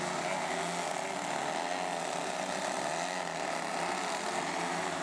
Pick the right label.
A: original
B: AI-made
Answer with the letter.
A